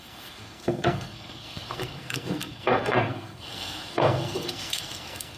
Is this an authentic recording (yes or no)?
no